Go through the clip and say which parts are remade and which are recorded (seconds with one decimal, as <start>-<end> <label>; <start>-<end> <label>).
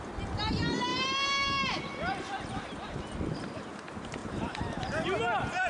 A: 0.0-0.9 recorded; 0.9-1.6 remade; 1.6-4.2 recorded; 4.2-4.8 remade; 4.8-5.7 recorded